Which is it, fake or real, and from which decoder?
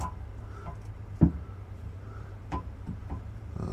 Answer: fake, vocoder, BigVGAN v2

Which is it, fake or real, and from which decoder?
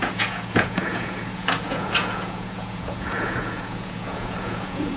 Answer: fake, vocoder, Vocos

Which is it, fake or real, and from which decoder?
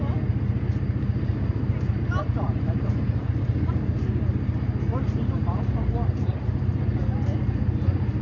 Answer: real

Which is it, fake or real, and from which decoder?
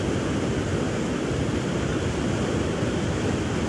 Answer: real